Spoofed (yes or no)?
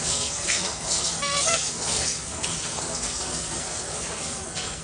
yes